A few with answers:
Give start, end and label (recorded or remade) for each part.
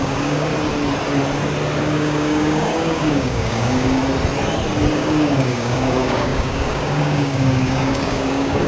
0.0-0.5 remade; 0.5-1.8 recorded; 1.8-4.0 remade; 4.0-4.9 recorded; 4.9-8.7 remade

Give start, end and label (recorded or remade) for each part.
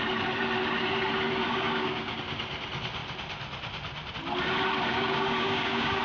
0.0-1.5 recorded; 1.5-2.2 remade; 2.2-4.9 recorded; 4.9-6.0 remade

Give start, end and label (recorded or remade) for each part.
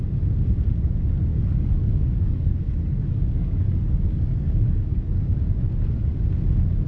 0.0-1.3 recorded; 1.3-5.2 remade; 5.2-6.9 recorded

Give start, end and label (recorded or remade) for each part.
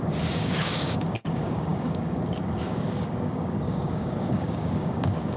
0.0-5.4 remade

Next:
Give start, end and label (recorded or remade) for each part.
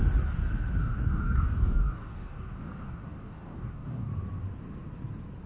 0.0-0.8 recorded; 0.8-4.1 remade; 4.1-5.5 recorded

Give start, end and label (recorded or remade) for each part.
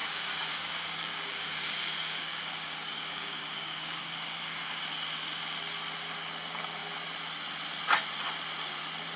0.0-4.8 remade; 4.8-9.2 recorded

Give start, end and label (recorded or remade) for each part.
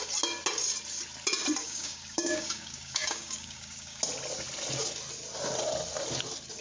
0.0-1.6 recorded; 1.6-4.0 remade; 4.0-6.6 recorded